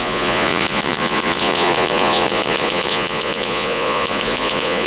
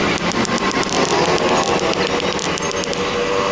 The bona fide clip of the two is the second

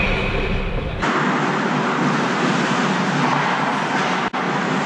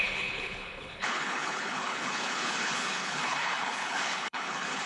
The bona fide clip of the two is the first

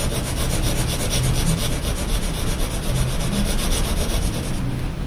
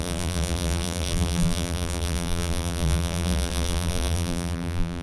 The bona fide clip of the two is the first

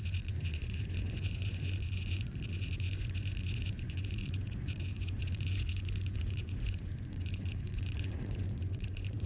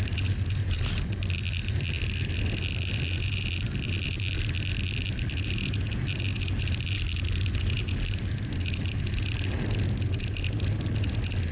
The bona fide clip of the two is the second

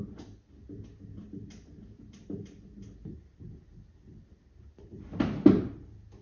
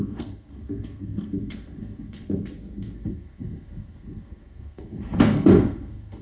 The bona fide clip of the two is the first